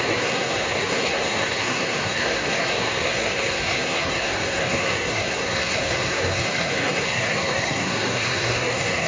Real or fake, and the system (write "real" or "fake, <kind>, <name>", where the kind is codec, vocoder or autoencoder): fake, codec, SNAC